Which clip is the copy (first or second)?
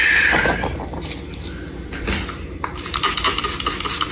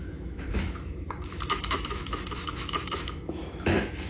second